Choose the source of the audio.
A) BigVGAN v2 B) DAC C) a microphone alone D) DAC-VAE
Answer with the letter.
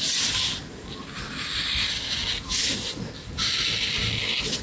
C